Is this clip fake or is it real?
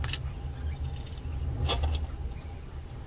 real